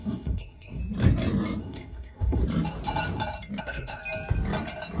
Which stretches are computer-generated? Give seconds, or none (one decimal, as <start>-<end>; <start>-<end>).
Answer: 0.0-0.8; 1.6-2.4; 3.6-4.0